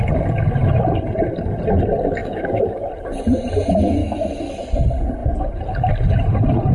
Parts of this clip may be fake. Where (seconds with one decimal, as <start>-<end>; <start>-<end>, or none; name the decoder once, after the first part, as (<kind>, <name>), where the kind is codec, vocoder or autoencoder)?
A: 2.2-2.9 (autoencoder, DAC-VAE); 4.0-4.6